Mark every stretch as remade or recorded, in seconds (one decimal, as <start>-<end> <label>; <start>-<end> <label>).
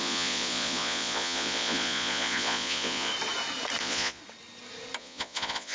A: 0.0-3.1 remade; 3.1-3.8 recorded; 3.8-4.2 remade; 4.2-5.0 recorded; 5.0-5.7 remade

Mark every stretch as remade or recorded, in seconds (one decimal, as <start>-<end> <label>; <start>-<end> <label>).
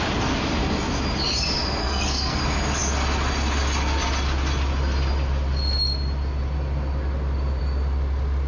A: 0.0-1.8 recorded; 1.8-2.4 remade; 2.4-8.5 recorded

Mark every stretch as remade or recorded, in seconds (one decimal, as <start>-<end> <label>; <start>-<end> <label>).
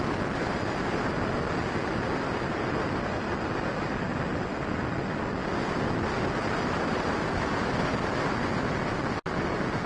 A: 0.0-9.9 recorded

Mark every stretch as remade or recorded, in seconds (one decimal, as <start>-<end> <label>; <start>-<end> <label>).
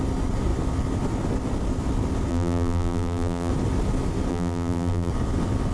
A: 0.0-2.3 recorded; 2.3-3.5 remade; 3.5-4.3 recorded; 4.3-5.1 remade; 5.1-5.7 recorded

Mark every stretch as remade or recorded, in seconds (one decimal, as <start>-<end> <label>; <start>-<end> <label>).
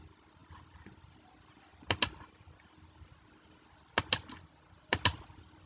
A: 0.0-5.7 recorded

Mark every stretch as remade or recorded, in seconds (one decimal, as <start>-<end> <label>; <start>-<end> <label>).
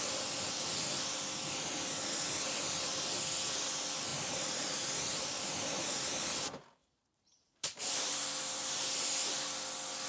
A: 0.0-4.1 recorded; 4.1-5.2 remade; 5.2-6.8 recorded; 6.8-9.2 remade; 9.2-10.1 recorded